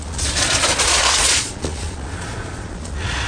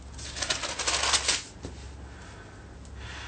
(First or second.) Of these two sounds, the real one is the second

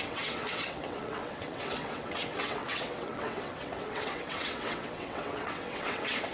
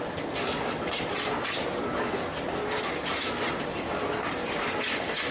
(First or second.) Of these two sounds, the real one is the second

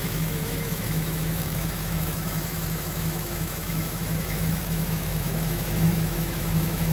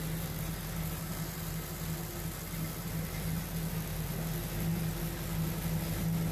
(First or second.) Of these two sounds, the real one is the second